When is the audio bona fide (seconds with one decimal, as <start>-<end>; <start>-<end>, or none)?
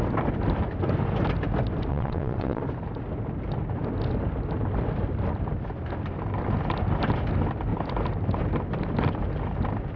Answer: 0.0-1.9; 2.6-10.0